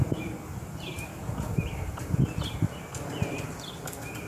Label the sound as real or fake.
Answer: real